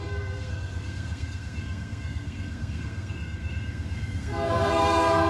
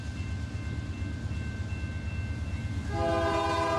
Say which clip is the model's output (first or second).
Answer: first